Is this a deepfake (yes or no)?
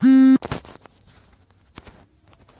no